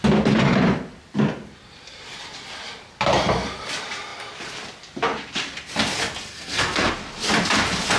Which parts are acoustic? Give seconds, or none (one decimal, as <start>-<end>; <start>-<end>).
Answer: 0.0-6.3; 6.9-8.0